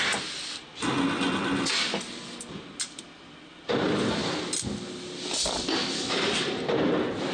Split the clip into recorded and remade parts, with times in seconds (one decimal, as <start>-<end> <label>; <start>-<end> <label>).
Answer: 0.0-7.3 recorded